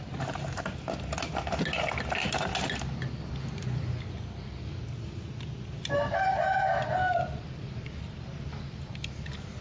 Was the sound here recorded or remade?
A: recorded